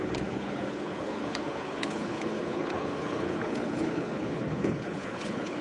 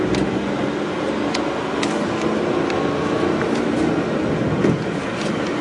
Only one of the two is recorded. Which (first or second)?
second